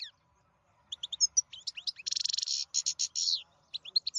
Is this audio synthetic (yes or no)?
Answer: no